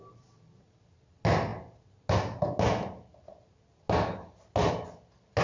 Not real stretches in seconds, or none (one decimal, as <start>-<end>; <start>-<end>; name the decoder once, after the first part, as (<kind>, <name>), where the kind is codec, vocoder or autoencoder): none